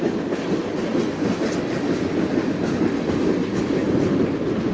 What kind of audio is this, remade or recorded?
recorded